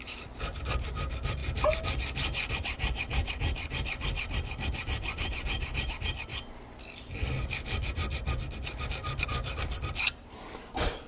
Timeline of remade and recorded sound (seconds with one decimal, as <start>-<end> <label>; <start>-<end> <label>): 0.0-1.4 remade; 1.4-2.5 recorded; 2.5-6.3 remade; 6.3-9.2 recorded; 9.2-11.1 remade